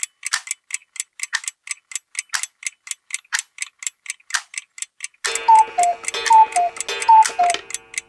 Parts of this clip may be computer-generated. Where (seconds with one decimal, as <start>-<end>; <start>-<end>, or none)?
none